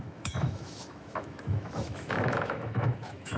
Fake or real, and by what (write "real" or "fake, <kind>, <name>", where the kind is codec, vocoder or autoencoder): fake, autoencoder, DAC-VAE